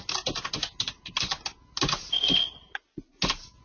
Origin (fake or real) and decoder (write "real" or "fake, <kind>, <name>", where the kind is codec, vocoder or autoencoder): real